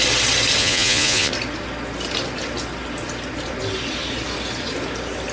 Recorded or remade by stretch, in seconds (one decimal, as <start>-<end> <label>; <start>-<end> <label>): 0.0-0.6 recorded; 0.6-1.3 remade; 1.3-5.3 recorded